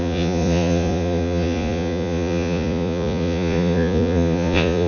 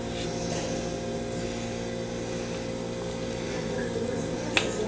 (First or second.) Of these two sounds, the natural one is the second